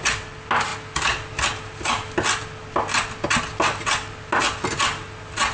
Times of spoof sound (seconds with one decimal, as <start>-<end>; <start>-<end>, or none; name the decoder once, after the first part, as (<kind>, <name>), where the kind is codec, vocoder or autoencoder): none